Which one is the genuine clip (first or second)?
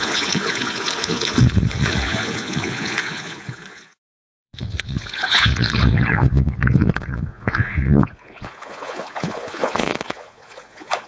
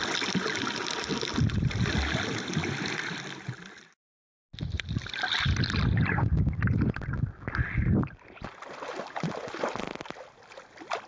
second